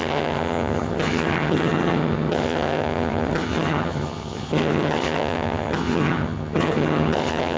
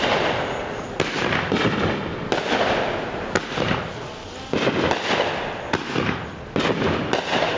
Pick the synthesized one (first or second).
first